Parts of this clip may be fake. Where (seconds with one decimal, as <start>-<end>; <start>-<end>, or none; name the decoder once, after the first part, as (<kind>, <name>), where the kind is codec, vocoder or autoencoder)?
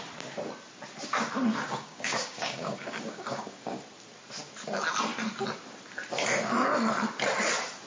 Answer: 1.5-3.8 (codec, DAC)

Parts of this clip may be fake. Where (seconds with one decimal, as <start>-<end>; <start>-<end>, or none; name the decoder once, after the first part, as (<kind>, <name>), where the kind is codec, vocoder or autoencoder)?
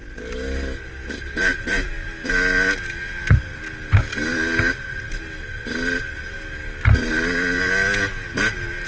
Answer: none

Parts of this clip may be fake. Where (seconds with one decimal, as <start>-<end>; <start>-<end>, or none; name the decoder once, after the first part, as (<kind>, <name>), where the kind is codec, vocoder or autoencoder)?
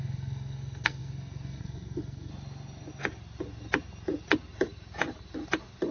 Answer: 0.0-2.3 (codec, SNAC)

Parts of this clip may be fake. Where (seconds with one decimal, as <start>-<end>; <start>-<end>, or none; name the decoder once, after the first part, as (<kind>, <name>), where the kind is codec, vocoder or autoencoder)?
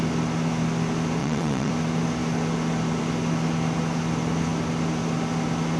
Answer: 1.2-1.7 (vocoder, WaveNeXt)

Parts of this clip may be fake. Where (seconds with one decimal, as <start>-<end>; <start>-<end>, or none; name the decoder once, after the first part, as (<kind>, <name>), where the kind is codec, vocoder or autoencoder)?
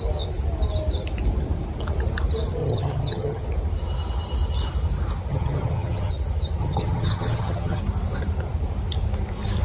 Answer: 2.6-3.4 (vocoder, HiFi-GAN); 5.3-6.1; 6.6-7.8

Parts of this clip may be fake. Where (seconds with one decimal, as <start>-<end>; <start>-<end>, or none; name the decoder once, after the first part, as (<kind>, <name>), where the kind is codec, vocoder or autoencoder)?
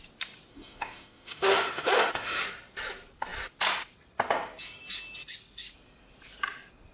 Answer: 0.5-2.4 (autoencoder, DAC-VAE)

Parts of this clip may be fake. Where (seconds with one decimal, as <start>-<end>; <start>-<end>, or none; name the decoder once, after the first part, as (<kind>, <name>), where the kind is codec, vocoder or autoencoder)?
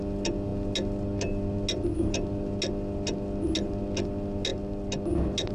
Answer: none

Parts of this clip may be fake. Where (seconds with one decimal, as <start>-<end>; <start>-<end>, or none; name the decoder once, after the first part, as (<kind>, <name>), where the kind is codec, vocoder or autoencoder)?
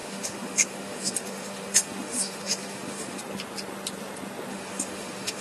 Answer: 0.0-3.2 (autoencoder, DAC-VAE); 4.5-5.4